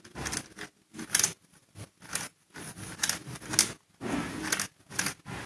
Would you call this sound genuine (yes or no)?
yes